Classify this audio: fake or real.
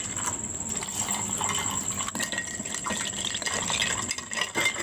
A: real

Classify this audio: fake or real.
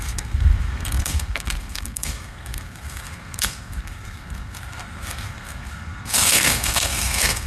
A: fake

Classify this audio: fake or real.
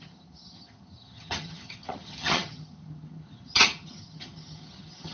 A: fake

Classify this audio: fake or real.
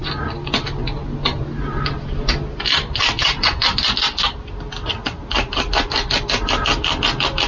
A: real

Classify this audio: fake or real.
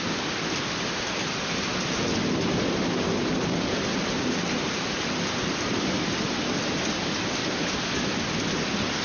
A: real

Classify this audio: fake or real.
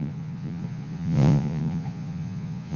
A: fake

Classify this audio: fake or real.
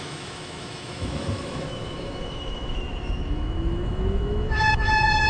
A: fake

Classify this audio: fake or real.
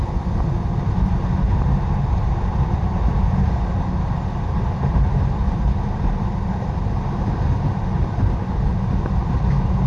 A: real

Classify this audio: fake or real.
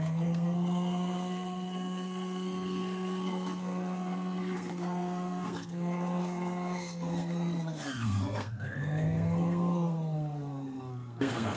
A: fake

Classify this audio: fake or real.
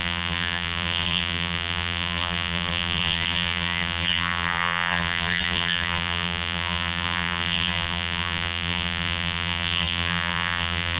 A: fake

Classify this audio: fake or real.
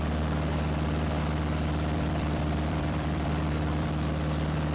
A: fake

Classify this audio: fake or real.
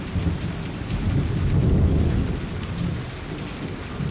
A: real